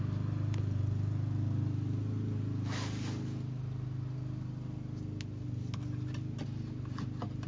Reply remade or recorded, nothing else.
recorded